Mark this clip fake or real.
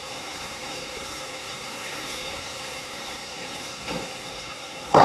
fake